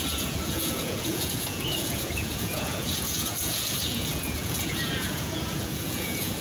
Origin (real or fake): fake